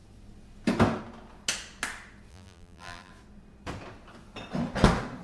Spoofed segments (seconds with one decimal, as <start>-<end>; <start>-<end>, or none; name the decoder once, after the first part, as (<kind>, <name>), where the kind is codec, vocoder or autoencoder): 2.3-3.1 (vocoder, BigVGAN v2)